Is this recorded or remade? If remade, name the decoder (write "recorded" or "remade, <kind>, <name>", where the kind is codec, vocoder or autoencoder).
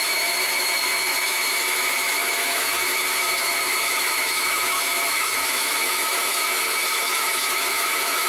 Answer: remade, autoencoder, DAC-VAE